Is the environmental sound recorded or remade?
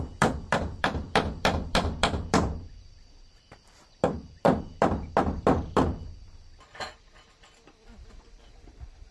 remade